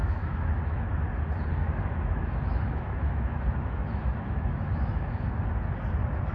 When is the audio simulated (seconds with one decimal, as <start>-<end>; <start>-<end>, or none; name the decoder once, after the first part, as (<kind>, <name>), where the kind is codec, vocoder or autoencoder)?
0.0-1.0 (autoencoder, DAC-VAE); 1.6-5.4